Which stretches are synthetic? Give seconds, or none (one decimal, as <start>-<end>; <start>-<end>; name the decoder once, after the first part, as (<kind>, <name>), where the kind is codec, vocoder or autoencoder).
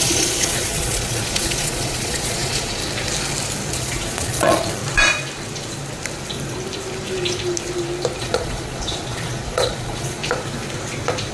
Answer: 0.0-2.8 (vocoder, Vocos); 3.7-4.8; 8.2-10.2